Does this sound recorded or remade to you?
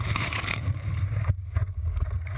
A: remade